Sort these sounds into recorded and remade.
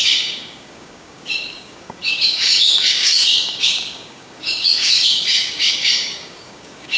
remade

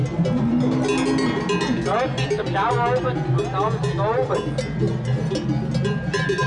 recorded